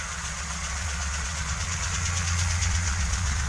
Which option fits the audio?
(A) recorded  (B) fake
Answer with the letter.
B